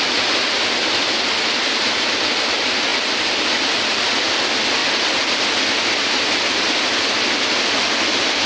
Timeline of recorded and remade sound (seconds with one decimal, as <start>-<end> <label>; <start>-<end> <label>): 0.0-4.8 recorded; 4.8-6.7 remade; 6.7-8.5 recorded